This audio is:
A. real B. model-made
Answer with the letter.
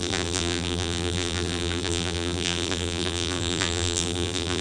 B